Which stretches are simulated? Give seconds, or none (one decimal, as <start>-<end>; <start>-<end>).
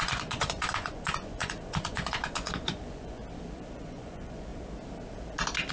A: 0.0-3.2; 3.8-4.5